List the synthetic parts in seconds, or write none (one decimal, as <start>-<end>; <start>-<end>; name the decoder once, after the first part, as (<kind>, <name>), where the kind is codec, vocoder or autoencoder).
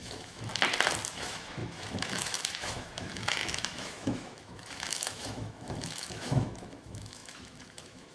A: 0.0-0.5 (autoencoder, DAC-VAE); 1.1-8.1